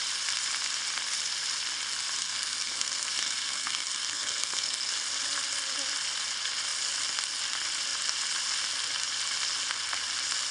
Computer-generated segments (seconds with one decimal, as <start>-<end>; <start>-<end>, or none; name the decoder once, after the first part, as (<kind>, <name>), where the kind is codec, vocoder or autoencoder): 2.2-4.9 (codec, SNAC)